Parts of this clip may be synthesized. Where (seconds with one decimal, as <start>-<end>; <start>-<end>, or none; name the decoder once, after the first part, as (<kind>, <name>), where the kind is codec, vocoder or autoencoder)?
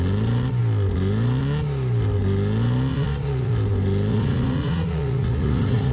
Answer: 2.9-3.5 (vocoder, Vocos); 4.1-5.9